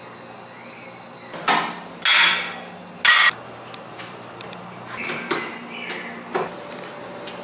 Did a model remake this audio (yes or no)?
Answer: no